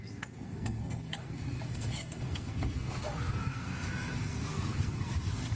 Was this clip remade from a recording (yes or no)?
yes